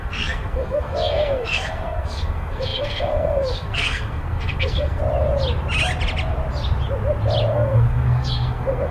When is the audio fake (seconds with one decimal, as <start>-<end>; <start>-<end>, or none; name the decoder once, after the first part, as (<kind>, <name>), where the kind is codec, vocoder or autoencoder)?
0.0-5.0 (codec, SNAC); 7.5-8.9